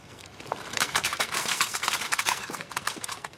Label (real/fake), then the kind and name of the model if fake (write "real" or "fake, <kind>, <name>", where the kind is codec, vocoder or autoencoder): fake, codec, SNAC